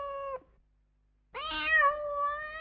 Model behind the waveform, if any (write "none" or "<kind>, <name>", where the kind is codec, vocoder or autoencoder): none